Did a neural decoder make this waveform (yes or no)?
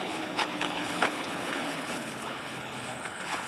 yes